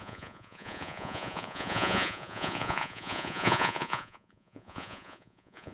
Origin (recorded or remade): remade